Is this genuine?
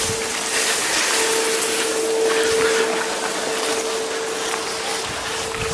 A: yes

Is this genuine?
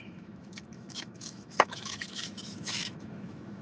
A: no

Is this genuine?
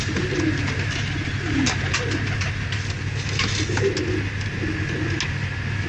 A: yes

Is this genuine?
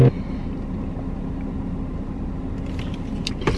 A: yes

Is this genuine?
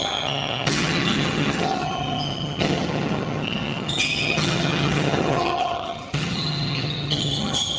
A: no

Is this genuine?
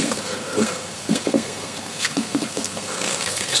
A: no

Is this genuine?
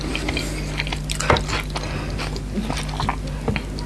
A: yes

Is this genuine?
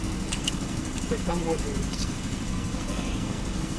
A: no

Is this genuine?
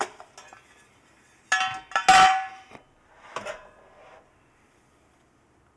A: yes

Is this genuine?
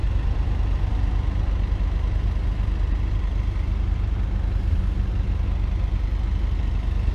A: yes